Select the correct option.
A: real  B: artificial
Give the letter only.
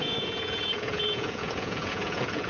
B